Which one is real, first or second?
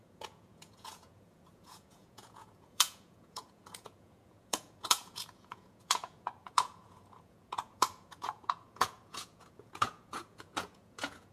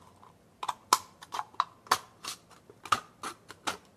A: second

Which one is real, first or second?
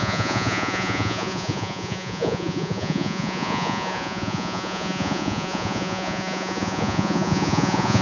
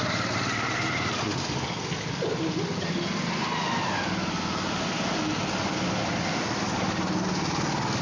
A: second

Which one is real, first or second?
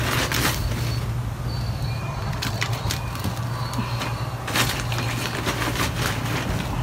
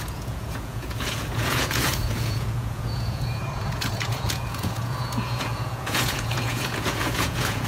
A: first